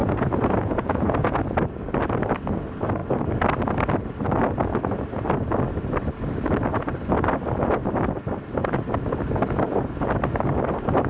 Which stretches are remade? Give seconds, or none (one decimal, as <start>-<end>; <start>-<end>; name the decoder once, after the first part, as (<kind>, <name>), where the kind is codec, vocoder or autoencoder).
0.0-1.4 (vocoder, Vocos)